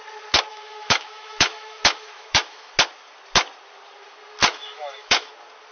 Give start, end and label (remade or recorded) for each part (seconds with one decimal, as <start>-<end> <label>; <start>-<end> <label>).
0.0-0.5 recorded; 0.5-2.7 remade; 2.7-4.5 recorded; 4.5-5.3 remade; 5.3-5.7 recorded